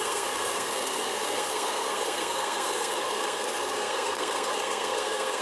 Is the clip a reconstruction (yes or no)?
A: yes